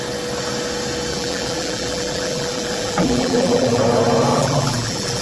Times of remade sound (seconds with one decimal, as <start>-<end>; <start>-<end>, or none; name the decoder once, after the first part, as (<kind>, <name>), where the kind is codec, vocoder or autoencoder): 1.1-3.8 (vocoder, BigVGAN v2); 4.3-5.2